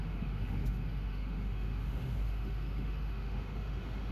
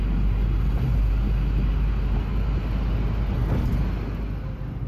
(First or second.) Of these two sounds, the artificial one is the first